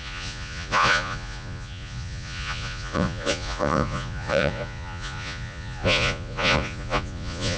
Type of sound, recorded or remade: remade